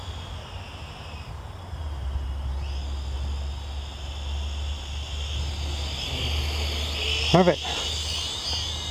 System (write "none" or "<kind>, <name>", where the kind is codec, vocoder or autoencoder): none